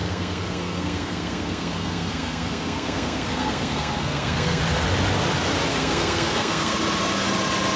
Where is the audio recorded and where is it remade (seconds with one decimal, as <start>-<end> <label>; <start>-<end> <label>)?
0.0-4.6 remade; 4.6-5.7 recorded; 5.7-6.8 remade; 6.8-7.8 recorded

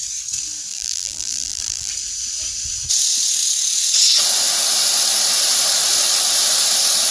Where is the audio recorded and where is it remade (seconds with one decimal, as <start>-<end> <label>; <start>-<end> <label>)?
0.0-0.7 recorded; 0.7-1.9 remade; 1.9-7.1 recorded

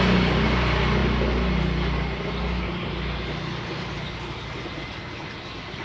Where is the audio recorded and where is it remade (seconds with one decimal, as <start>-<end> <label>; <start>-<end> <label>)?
0.0-5.8 recorded

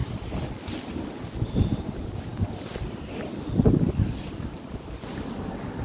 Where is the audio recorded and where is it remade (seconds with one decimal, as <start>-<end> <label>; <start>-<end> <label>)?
0.0-0.5 remade; 0.5-5.8 recorded

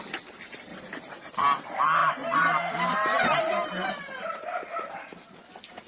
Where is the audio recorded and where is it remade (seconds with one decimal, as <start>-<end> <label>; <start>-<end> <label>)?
0.0-0.7 recorded; 0.7-1.4 remade; 1.4-2.0 recorded; 2.0-5.5 remade; 5.5-5.9 recorded

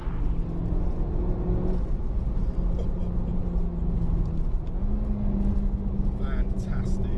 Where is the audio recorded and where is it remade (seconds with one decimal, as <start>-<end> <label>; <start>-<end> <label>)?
0.0-7.2 recorded

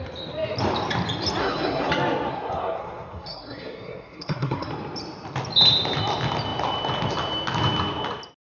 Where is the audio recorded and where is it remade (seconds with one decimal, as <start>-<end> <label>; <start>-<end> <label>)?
0.0-1.4 recorded; 1.4-1.9 remade; 1.9-2.3 recorded; 2.3-4.7 remade; 4.7-8.4 recorded